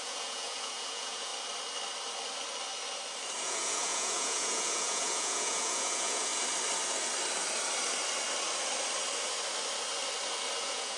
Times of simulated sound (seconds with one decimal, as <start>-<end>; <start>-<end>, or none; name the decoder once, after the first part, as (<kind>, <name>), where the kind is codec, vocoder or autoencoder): 0.0-1.3 (vocoder, Vocos); 3.4-6.3; 10.6-11.0